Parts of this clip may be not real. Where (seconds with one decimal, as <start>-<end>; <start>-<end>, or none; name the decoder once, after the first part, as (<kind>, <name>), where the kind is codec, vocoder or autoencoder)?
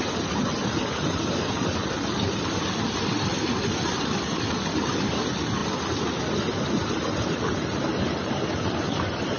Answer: none